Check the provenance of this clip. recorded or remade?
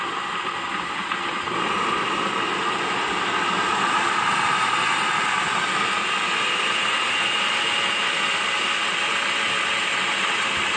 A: recorded